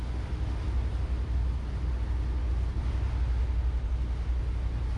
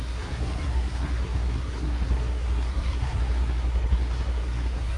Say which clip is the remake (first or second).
second